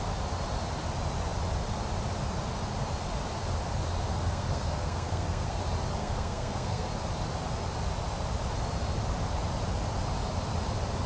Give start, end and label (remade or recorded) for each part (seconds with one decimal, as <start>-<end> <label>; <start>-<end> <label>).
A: 0.0-4.1 recorded; 4.1-5.6 remade; 5.6-6.0 recorded; 6.0-6.9 remade; 6.9-11.1 recorded